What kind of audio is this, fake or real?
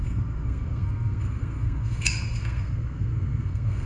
fake